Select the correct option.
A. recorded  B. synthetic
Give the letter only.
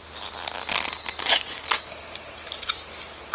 A